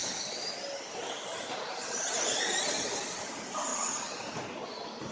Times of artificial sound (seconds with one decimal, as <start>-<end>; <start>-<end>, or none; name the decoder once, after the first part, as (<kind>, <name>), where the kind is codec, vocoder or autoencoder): none